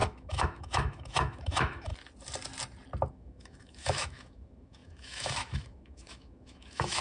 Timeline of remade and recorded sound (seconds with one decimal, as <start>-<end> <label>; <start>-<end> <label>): 0.0-1.9 remade; 1.9-3.1 recorded; 3.1-7.0 remade